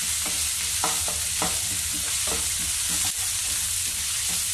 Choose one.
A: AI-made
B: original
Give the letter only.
B